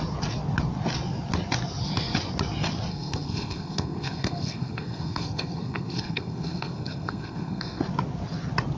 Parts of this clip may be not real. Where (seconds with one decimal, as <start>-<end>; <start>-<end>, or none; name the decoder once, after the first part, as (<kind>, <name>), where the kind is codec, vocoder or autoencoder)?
2.9-7.8 (codec, SNAC)